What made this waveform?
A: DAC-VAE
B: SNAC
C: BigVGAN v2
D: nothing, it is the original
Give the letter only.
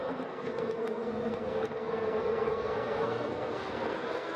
B